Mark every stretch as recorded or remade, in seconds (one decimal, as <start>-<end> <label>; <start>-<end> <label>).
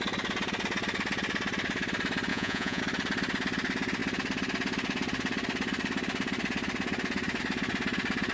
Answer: 0.0-2.3 recorded; 2.3-2.8 remade; 2.8-8.3 recorded